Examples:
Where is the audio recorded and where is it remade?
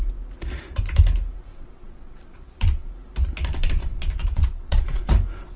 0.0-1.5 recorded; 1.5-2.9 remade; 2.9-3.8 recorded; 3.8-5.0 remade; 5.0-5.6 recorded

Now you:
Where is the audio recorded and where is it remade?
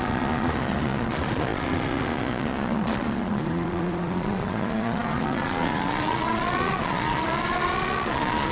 0.0-8.5 remade